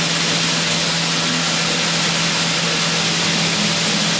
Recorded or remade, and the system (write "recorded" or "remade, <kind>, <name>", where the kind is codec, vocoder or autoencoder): recorded